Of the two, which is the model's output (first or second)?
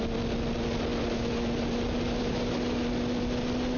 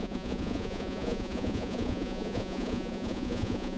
second